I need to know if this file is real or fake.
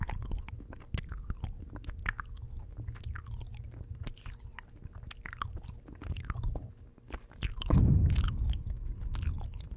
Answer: real